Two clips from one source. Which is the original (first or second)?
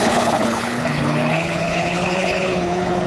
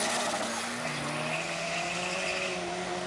second